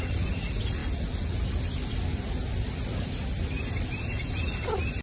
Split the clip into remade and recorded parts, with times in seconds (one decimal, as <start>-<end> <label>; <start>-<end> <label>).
0.0-5.0 recorded